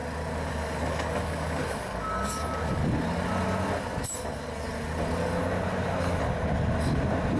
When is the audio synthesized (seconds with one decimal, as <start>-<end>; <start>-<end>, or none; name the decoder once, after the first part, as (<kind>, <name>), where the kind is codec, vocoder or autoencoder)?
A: 0.5-2.8 (codec, DAC)